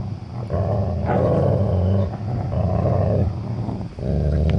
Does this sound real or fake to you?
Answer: real